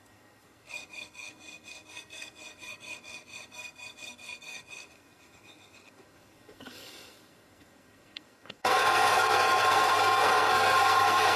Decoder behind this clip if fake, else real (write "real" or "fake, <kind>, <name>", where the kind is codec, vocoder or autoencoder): fake, codec, SNAC